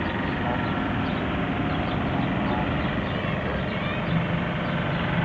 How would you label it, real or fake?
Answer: real